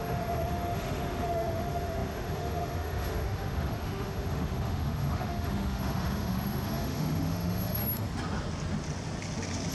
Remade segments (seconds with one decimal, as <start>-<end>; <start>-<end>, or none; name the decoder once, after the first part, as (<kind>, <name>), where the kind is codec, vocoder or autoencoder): 0.0-7.8 (autoencoder, DAC-VAE)